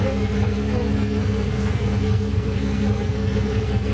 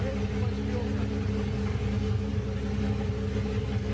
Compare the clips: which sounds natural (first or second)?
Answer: second